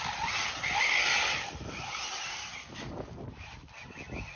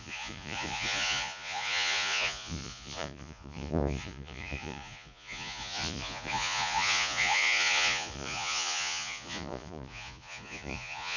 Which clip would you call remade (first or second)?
second